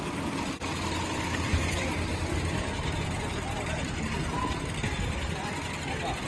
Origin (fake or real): real